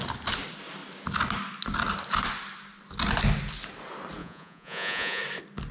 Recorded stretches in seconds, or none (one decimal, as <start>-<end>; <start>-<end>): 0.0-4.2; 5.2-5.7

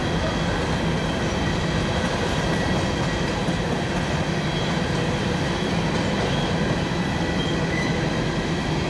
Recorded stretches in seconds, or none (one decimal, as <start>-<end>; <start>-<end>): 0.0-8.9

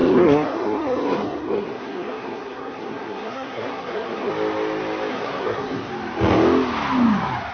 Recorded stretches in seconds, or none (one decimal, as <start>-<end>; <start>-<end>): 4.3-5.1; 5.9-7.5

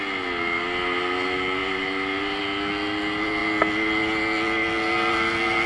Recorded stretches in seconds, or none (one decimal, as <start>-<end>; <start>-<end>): 0.0-5.7

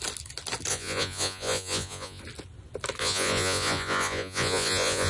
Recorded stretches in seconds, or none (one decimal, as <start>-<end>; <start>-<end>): 0.0-0.7; 2.2-3.0

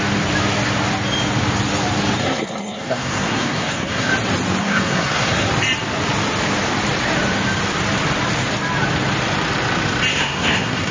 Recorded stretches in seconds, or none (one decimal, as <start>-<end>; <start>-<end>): 0.0-2.2; 4.1-4.6; 5.5-10.1

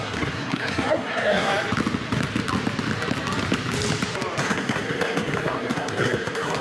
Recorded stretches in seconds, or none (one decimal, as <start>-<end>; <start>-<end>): 1.5-4.4

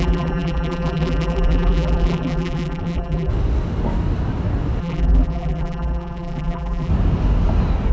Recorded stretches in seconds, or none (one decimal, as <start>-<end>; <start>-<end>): 3.3-4.8; 6.9-7.9